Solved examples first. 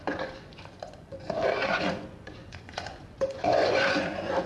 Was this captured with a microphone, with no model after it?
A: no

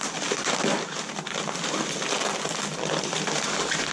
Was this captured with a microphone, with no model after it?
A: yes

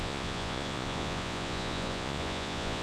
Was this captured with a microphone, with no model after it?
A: no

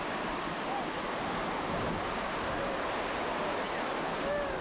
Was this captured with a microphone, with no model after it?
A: yes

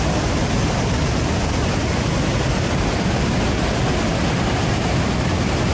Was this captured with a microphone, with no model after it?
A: yes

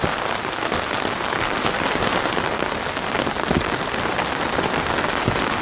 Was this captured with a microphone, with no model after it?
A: yes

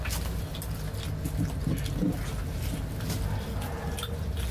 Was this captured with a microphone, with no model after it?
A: yes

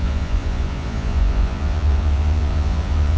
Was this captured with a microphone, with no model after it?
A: no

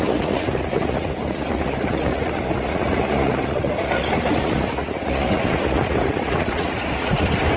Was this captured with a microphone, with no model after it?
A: no